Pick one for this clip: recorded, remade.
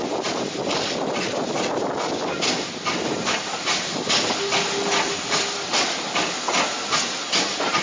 recorded